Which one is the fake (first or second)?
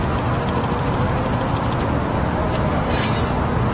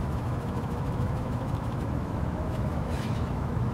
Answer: second